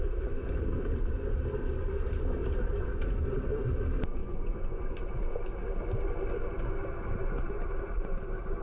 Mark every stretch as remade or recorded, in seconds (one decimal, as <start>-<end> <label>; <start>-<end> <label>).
0.0-4.2 recorded; 4.2-4.8 remade; 4.8-8.6 recorded